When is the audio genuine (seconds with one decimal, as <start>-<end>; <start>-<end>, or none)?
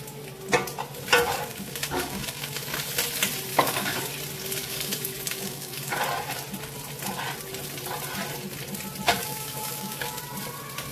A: 0.0-1.5; 2.8-3.5; 4.0-4.6; 6.0-9.2; 10.2-10.9